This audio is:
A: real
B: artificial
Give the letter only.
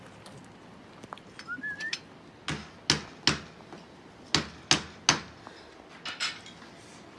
A